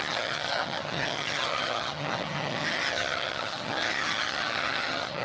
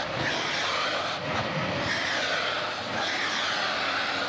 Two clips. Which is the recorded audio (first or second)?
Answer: second